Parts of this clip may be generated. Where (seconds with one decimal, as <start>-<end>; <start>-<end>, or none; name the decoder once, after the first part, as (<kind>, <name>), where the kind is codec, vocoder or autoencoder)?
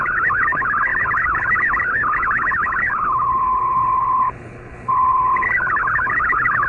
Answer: 0.0-6.7 (codec, HILCodec)